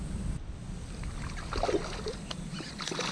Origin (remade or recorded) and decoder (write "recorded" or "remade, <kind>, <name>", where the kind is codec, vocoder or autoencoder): recorded